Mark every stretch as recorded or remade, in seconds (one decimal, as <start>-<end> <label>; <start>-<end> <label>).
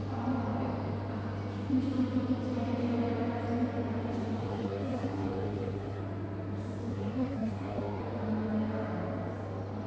0.0-4.4 recorded; 4.4-6.0 remade; 6.0-6.9 recorded; 6.9-8.0 remade; 8.0-9.9 recorded